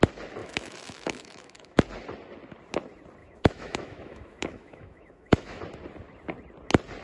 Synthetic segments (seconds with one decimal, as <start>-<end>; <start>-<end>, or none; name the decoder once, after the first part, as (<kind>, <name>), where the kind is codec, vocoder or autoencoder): 0.4-1.8 (autoencoder, DAC-VAE); 3.2-5.6